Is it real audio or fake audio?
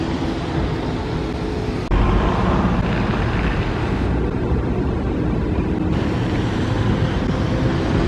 real